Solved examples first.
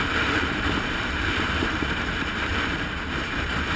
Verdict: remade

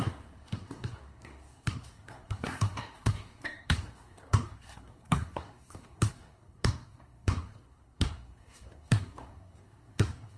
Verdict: remade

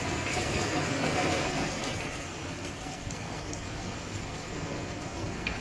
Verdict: remade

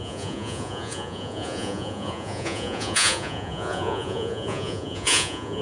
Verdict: remade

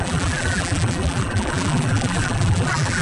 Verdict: remade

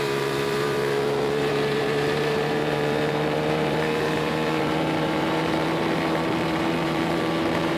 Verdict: remade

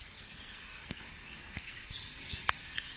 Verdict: remade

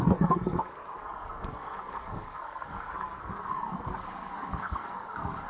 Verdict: remade